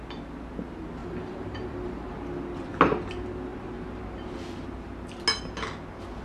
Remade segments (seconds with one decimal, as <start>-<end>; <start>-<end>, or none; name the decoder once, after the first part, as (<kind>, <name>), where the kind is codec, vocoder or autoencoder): 1.0-2.1 (vocoder, BigVGAN v2)